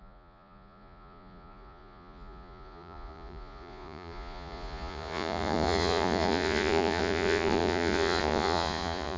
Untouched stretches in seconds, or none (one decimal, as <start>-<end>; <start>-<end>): none